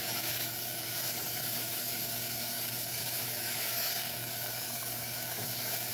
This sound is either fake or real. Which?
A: fake